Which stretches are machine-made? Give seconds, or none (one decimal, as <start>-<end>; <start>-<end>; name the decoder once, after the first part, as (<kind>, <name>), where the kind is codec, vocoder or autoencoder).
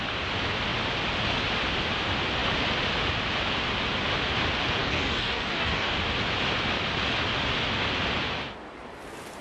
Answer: 4.8-5.9 (codec, DAC)